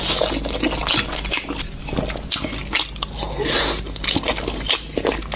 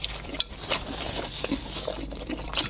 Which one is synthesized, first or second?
second